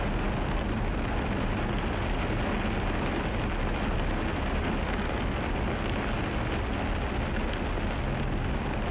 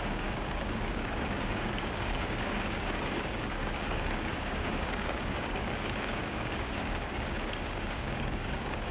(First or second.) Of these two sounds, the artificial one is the second